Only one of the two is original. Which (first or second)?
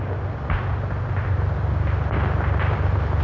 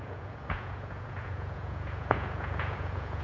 first